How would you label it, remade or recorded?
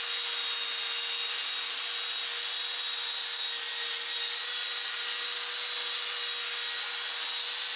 recorded